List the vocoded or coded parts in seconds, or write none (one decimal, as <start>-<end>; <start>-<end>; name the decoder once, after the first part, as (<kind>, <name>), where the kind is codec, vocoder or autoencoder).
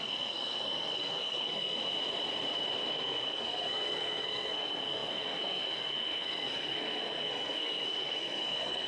0.0-1.8 (codec, SNAC); 2.9-8.9